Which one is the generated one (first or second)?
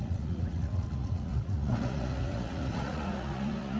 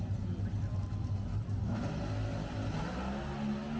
first